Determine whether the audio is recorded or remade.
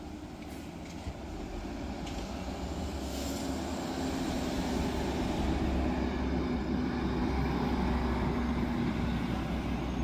recorded